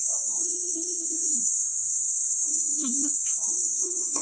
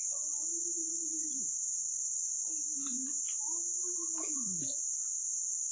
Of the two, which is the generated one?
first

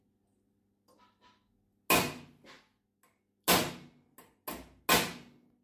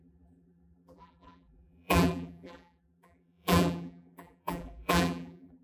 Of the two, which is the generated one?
second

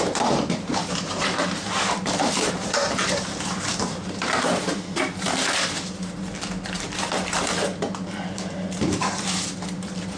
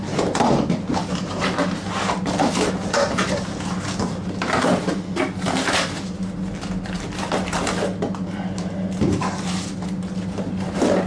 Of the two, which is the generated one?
first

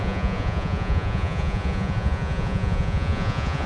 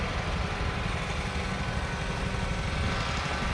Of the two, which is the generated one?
first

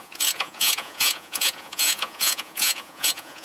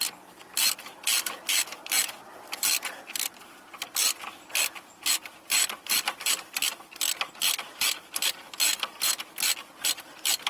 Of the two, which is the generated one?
first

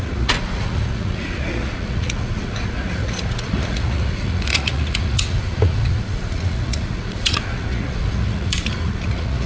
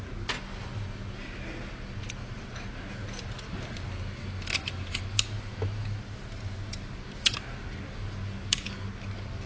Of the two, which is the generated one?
first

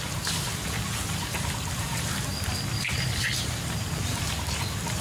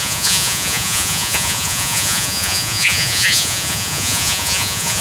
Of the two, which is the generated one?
second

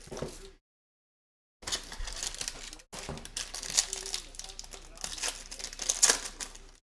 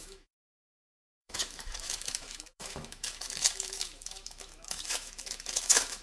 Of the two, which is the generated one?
second